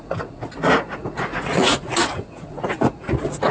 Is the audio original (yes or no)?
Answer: no